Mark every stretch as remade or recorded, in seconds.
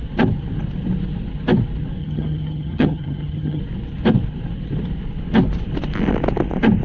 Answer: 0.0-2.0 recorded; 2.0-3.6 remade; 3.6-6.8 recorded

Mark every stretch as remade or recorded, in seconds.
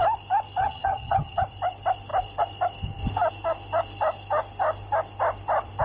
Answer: 0.0-0.6 recorded; 0.6-1.4 remade; 1.4-5.8 recorded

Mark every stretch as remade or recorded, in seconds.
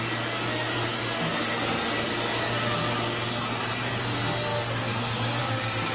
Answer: 0.0-5.9 recorded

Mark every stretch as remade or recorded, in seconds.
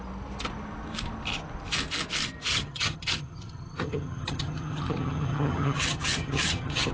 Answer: 0.0-2.5 recorded; 2.5-6.9 remade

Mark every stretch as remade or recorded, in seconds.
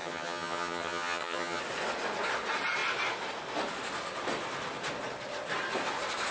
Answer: 0.0-1.6 remade; 1.6-6.3 recorded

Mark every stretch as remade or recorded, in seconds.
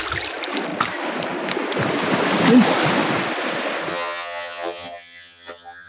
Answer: 0.0-3.9 recorded; 3.9-5.9 remade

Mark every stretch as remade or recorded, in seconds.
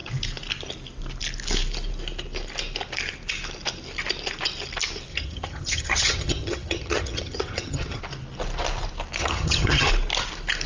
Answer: 0.0-5.1 recorded; 5.1-8.0 remade; 8.0-9.2 recorded; 9.2-9.9 remade; 9.9-10.7 recorded